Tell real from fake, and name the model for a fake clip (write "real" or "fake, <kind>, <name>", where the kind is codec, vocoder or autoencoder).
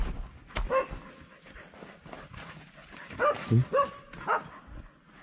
real